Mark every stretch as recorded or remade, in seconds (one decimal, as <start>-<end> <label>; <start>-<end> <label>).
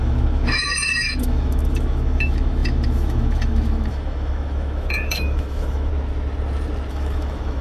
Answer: 0.0-5.9 remade; 5.9-6.9 recorded; 6.9-7.6 remade